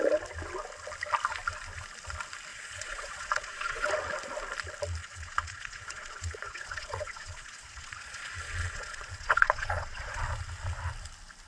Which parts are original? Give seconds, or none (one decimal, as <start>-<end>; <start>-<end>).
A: 0.0-2.5; 3.9-5.0; 10.2-11.5